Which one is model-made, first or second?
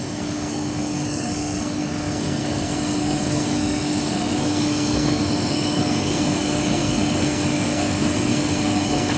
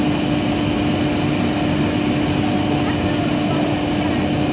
first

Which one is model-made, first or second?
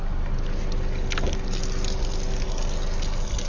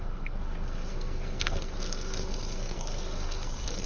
second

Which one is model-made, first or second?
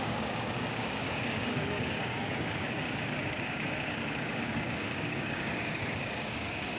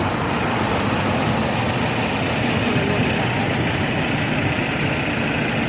first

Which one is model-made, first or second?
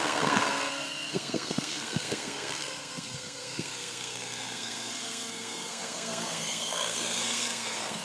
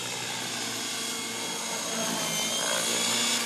first